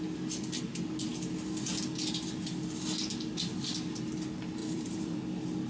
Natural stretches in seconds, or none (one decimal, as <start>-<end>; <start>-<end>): 0.0-4.6; 5.2-5.7